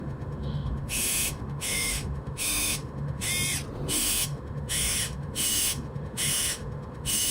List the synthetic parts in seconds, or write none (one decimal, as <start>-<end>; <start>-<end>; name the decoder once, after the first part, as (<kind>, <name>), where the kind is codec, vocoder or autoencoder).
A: 0.0-3.3 (autoencoder, DAC-VAE); 3.9-7.3